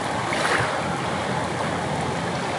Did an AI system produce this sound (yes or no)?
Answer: no